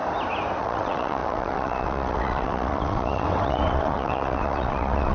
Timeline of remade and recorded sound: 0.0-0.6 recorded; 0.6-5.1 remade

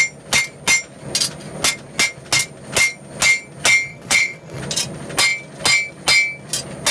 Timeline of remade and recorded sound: 0.0-3.9 recorded; 3.9-4.6 remade; 4.6-6.9 recorded

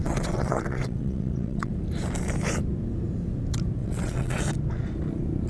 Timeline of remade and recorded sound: 0.0-1.7 remade; 1.7-3.8 recorded; 3.8-4.4 remade; 4.4-5.5 recorded

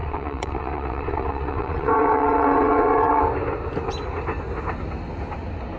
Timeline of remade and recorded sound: 0.0-3.2 remade; 3.2-5.8 recorded

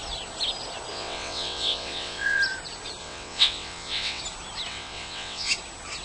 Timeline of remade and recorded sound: 0.0-0.9 recorded; 0.9-2.4 remade; 2.4-3.0 recorded; 3.0-4.2 remade; 4.2-4.7 recorded; 4.7-5.5 remade; 5.5-6.0 recorded

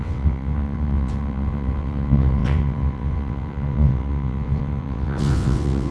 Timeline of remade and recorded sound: 0.0-5.9 remade

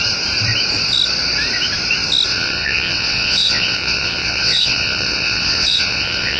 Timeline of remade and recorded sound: 0.0-2.3 recorded; 2.3-6.4 remade

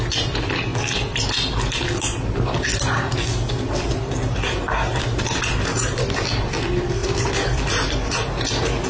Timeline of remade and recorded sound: 0.0-8.9 recorded